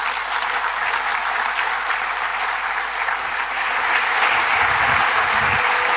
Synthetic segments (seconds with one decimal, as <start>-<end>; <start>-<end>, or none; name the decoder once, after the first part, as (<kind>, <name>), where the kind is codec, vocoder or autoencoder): none